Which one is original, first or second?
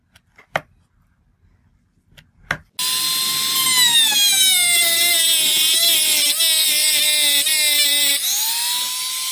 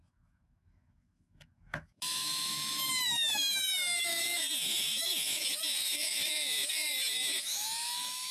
first